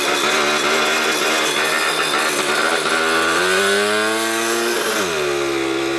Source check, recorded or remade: recorded